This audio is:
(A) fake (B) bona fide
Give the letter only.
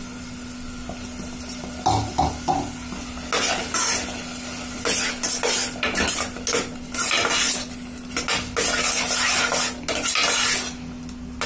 B